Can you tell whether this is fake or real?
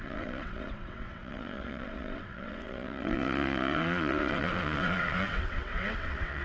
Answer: fake